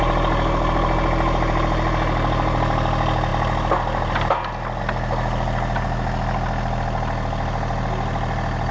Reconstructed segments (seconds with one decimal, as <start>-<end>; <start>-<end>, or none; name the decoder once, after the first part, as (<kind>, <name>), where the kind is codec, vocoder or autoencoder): none